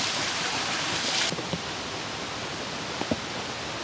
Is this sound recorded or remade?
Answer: recorded